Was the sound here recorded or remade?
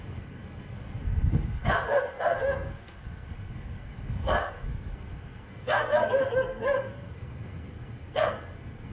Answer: remade